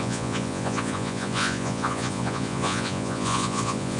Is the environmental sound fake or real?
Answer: fake